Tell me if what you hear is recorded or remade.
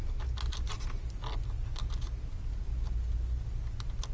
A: recorded